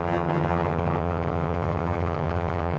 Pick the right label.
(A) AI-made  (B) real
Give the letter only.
A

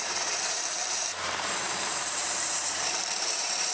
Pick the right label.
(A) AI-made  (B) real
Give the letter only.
A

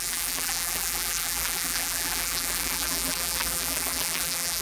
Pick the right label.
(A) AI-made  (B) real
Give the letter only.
A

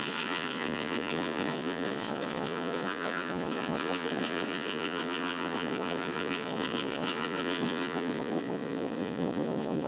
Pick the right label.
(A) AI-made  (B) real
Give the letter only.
A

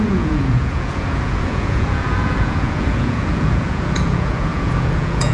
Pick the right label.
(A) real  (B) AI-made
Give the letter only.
B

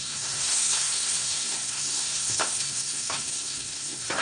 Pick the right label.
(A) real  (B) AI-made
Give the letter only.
B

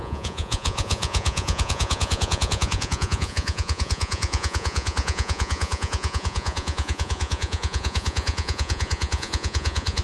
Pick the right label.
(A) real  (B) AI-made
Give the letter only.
B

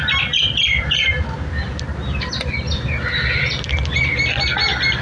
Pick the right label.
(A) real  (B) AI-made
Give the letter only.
A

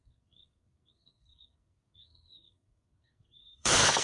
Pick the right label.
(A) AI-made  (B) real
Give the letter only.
A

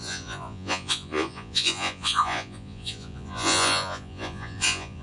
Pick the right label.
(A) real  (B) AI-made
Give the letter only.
B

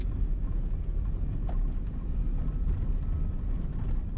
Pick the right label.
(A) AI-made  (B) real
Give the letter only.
B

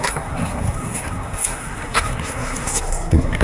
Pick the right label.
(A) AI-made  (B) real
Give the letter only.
A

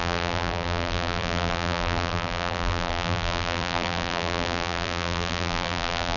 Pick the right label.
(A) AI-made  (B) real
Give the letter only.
A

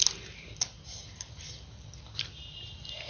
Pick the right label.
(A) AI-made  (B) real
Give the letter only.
B